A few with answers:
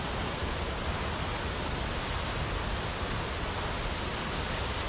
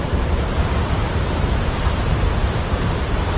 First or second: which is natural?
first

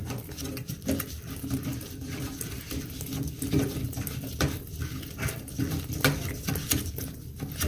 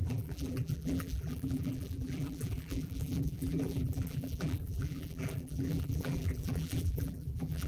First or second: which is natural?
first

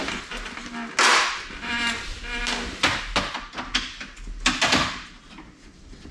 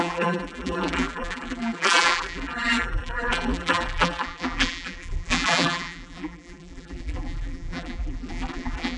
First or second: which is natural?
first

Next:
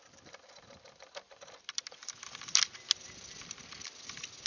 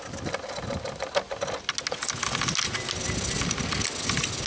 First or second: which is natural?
second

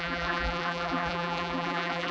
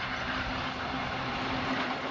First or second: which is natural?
second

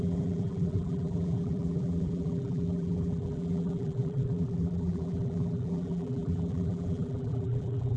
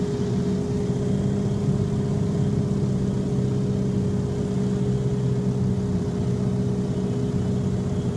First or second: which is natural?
second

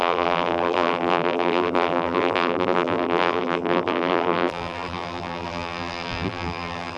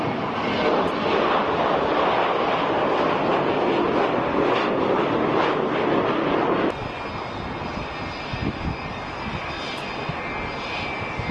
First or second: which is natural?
second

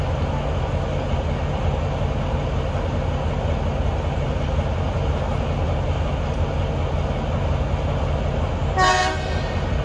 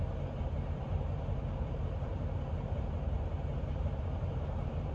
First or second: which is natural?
first